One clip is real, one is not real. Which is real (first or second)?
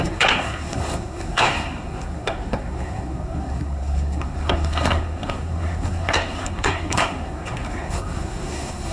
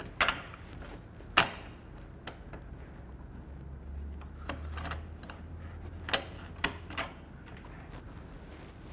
second